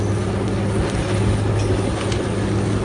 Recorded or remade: recorded